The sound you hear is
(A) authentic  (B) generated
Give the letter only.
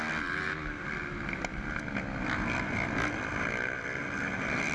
A